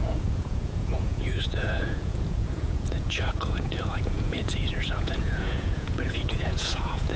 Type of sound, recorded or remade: remade